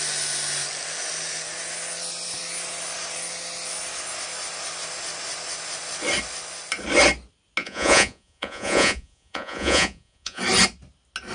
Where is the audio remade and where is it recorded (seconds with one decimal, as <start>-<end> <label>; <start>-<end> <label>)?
0.0-7.6 recorded; 7.6-10.4 remade; 10.4-11.3 recorded